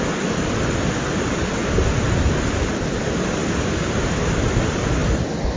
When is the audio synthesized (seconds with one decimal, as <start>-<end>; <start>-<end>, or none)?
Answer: 0.0-1.6; 2.6-3.4; 4.5-5.6